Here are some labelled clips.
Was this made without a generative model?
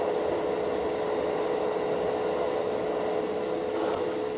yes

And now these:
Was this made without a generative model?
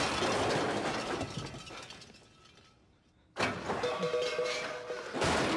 yes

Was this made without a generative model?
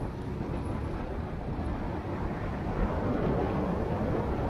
yes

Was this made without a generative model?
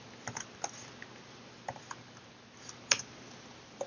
yes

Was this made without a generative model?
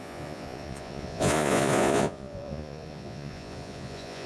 no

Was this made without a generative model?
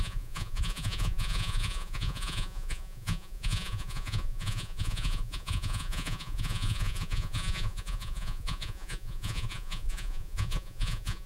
no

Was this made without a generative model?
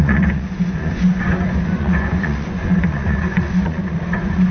no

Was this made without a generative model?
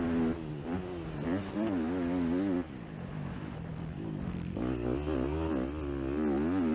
yes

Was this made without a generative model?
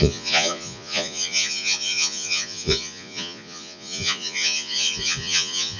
no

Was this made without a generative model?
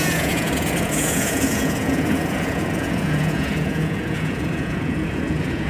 no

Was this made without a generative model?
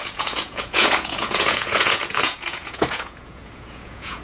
no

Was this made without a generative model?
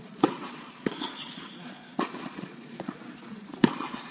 no